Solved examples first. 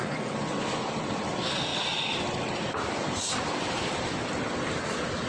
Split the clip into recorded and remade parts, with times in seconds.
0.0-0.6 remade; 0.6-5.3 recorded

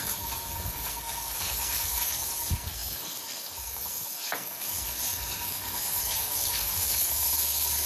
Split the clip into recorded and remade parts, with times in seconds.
0.0-7.9 remade

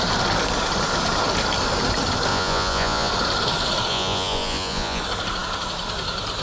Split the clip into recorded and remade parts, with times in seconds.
0.0-2.3 recorded; 2.3-3.1 remade; 3.1-3.9 recorded; 3.9-5.0 remade; 5.0-6.4 recorded

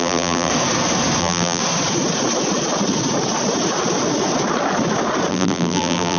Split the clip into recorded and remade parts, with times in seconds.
0.0-0.5 remade; 0.5-1.2 recorded; 1.2-1.6 remade; 1.6-5.3 recorded; 5.3-6.2 remade